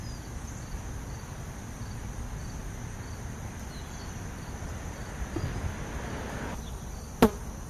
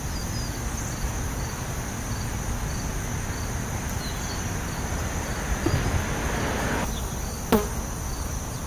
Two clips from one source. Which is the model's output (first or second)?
first